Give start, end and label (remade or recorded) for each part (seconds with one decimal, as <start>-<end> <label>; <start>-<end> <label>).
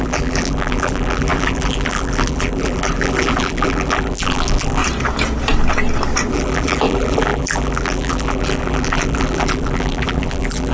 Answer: 0.0-4.8 remade; 4.8-6.3 recorded; 6.3-10.7 remade